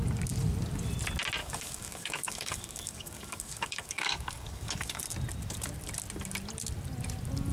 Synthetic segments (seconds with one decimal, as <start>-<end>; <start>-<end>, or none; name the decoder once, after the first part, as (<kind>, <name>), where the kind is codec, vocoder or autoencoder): 1.4-5.0 (codec, DAC)